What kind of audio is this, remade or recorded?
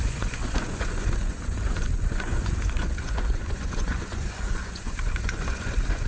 remade